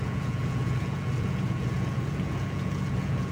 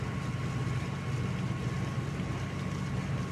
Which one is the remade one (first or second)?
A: first